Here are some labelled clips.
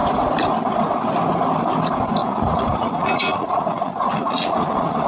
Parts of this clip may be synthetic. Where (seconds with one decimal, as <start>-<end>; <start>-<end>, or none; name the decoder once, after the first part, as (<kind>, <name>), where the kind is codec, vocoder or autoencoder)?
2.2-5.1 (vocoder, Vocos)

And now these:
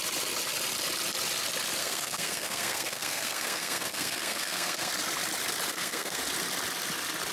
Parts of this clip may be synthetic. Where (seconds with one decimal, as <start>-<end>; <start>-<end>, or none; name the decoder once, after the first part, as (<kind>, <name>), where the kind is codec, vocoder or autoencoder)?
1.8-4.9 (codec, SNAC); 5.7-6.2

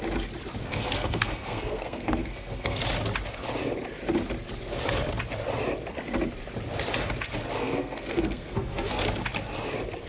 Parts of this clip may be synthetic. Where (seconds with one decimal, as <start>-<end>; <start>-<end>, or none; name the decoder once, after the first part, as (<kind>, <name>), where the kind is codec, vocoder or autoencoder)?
0.6-2.8 (codec, SNAC); 7.6-9.0

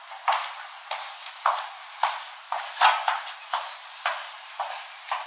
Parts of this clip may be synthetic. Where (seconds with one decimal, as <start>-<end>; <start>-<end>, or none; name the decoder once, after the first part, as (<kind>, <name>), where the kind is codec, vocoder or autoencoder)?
none

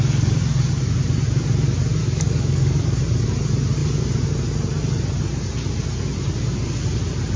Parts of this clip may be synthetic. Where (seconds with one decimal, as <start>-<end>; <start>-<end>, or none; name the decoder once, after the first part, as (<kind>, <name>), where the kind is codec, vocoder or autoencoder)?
2.0-3.0 (codec, DAC)

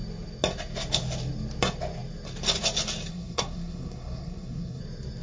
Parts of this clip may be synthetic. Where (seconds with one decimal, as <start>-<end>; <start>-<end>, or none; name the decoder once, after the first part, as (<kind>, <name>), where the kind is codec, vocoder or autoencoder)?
3.1-4.8 (codec, SNAC)

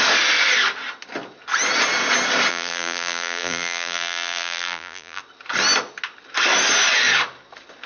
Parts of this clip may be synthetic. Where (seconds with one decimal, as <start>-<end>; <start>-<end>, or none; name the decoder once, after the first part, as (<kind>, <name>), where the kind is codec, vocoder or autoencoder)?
2.5-5.2 (vocoder, BigVGAN v2)

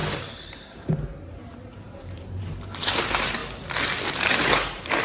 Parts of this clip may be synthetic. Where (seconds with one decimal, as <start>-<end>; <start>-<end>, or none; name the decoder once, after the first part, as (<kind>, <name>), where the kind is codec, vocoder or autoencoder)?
0.0-3.4 (vocoder, BigVGAN v2); 4.1-5.0